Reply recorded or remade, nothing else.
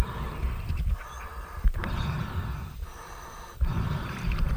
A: remade